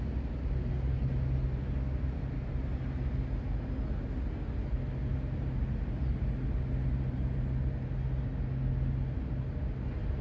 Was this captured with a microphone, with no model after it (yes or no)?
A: yes